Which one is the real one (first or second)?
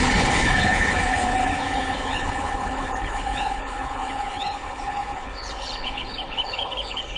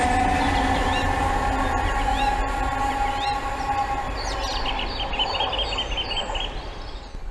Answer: second